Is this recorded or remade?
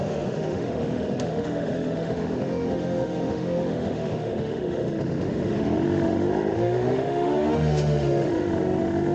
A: remade